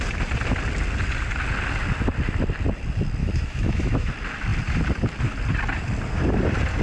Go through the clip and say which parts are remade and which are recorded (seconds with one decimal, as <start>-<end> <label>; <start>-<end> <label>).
0.0-3.2 recorded; 3.2-4.1 remade; 4.1-6.8 recorded